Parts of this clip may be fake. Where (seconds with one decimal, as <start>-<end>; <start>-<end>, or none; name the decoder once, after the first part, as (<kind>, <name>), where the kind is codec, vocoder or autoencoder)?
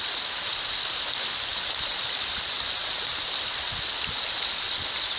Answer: none